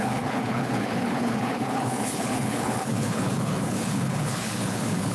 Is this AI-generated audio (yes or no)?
yes